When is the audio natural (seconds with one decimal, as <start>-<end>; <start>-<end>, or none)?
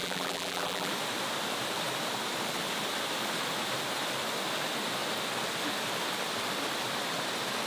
0.9-7.7